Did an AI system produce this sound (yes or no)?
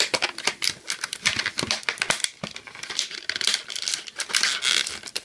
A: no